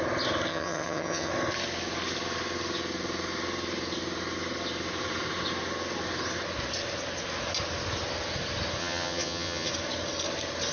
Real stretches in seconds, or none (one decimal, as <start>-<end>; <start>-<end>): 0.0-0.5; 1.3-8.8; 9.7-10.7